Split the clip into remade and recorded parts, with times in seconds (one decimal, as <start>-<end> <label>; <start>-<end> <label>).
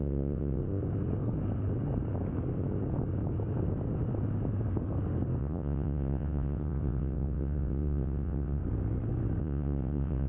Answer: 0.0-0.6 remade; 0.6-5.4 recorded; 5.4-8.6 remade; 8.6-9.4 recorded; 9.4-10.3 remade